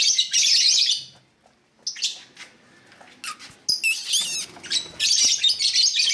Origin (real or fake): real